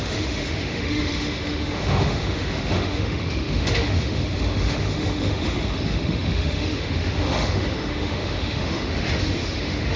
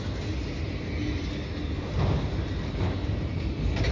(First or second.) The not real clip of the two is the first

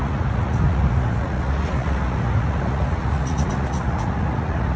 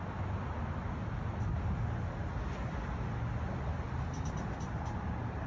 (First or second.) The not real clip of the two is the first